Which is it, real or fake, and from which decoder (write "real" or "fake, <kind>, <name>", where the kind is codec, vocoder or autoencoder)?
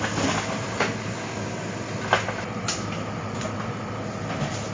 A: real